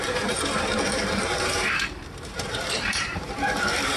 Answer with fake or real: fake